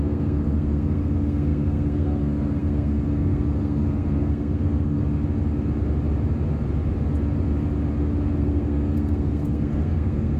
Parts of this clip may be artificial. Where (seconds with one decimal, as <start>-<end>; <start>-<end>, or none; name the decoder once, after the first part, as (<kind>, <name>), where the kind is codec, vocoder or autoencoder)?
0.0-5.0 (codec, SNAC); 8.4-10.4